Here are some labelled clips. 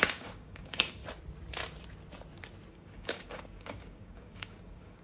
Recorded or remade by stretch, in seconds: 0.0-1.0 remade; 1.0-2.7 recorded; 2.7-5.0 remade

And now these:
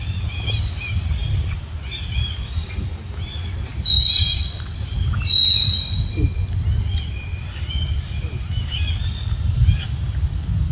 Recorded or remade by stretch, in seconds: 0.0-10.7 recorded

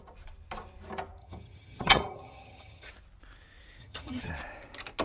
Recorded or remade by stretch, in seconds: 0.0-1.2 recorded; 1.2-2.9 remade; 2.9-3.8 recorded; 3.8-4.3 remade; 4.3-5.0 recorded

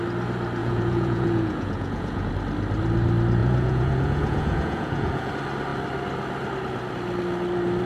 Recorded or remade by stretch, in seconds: 0.0-0.6 recorded; 0.6-2.3 remade; 2.3-3.4 recorded; 3.4-5.3 remade; 5.3-7.9 recorded